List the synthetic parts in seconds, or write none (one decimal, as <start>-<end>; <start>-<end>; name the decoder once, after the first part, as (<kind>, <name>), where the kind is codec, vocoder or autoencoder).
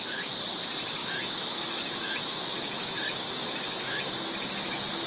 1.0-4.1 (autoencoder, DAC-VAE)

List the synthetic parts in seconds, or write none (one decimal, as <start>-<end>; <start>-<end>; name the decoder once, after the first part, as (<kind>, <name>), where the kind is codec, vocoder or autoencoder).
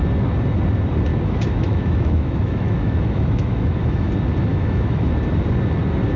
1.1-4.1 (autoencoder, DAC-VAE); 4.5-5.1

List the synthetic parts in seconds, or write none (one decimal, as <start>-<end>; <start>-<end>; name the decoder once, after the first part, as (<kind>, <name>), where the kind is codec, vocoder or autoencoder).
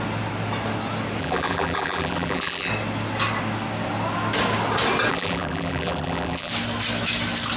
1.2-2.7 (vocoder, BigVGAN v2); 5.1-6.5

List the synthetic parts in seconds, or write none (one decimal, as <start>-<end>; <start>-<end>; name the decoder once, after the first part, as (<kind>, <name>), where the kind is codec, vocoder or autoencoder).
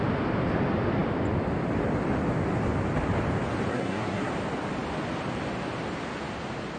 3.7-4.3 (codec, SNAC)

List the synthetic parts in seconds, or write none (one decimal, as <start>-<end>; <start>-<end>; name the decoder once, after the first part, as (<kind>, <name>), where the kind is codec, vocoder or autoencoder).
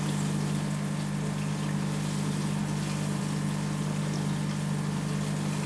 none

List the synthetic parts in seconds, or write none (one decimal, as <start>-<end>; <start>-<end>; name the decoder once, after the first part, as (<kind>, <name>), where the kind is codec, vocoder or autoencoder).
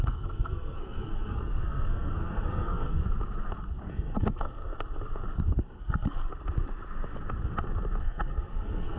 0.0-3.0 (codec, SNAC); 3.9-4.6; 5.8-6.3; 8.0-9.0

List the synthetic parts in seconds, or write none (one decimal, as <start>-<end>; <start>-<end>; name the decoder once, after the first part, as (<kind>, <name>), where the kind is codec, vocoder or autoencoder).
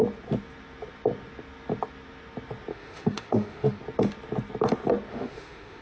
2.7-3.8 (autoencoder, DAC-VAE); 5.1-5.8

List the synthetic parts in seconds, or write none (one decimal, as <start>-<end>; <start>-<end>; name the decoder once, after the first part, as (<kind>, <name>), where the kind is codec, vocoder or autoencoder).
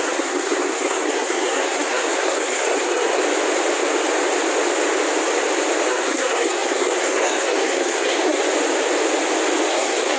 0.0-3.2 (codec, SNAC); 5.9-8.4; 9.7-10.2